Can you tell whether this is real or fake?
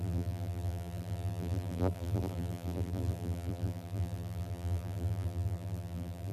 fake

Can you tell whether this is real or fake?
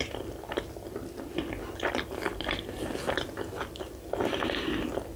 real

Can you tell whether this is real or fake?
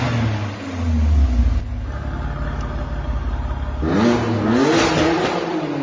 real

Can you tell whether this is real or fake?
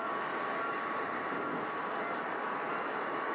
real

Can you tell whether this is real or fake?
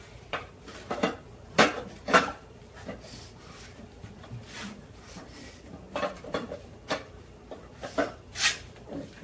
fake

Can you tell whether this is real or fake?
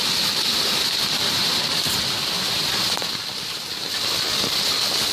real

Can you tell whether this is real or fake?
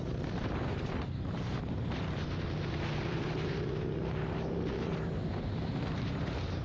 fake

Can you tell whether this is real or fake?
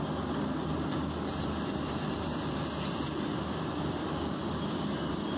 fake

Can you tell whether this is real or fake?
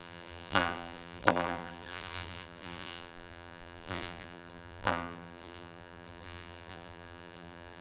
fake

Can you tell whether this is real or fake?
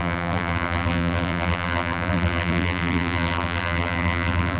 fake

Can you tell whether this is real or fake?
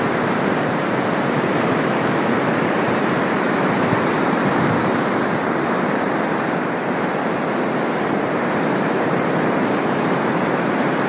fake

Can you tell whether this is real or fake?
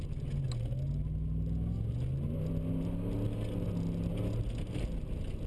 real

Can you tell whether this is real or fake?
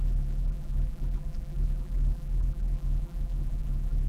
fake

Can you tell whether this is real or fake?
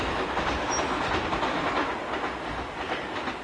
real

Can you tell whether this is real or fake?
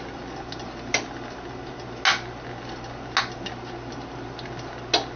real